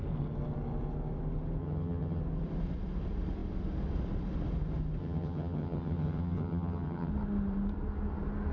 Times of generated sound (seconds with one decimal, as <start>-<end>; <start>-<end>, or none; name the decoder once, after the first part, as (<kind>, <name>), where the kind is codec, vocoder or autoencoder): 1.6-2.2 (vocoder, HiFi-GAN); 5.0-7.1